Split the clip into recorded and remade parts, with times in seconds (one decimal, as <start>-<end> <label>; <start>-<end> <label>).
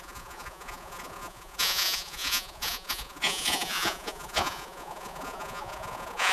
0.0-6.3 remade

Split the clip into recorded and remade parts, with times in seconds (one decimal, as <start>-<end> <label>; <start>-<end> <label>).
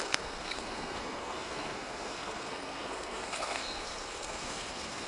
0.0-5.1 remade